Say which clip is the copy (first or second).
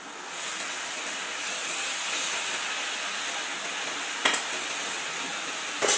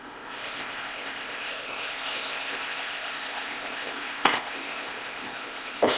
second